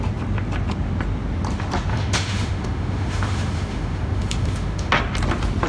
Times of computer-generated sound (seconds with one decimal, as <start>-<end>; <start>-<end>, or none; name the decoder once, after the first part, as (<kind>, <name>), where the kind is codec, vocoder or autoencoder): 1.9-4.9 (autoencoder, DAC-VAE)